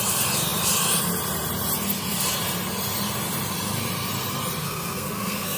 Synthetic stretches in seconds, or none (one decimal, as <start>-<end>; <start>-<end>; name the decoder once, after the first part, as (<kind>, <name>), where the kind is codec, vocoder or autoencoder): 4.6-5.6 (codec, SNAC)